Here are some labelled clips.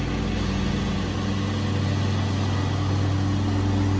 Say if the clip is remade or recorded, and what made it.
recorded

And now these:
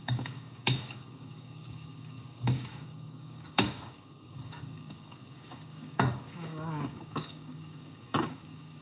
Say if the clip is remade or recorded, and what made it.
remade, codec, DAC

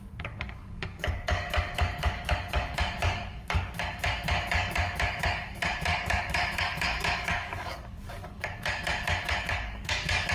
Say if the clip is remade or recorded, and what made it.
remade, codec, DAC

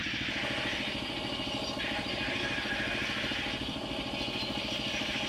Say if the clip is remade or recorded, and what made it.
recorded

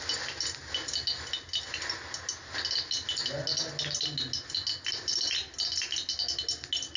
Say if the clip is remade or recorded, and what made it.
recorded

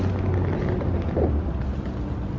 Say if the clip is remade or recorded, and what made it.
recorded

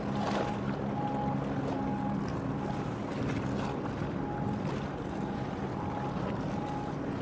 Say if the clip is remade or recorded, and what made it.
recorded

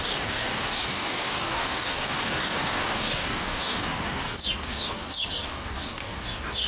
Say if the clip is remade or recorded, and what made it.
remade, codec, DAC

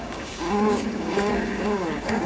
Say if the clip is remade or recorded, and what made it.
remade, codec, DAC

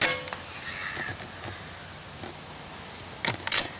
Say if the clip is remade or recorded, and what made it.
recorded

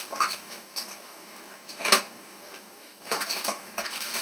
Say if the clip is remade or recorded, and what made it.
remade, codec, DAC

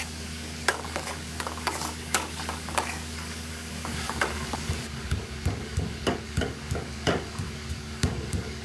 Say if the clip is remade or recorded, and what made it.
remade, codec, DAC